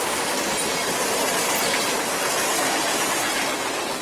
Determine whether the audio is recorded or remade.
recorded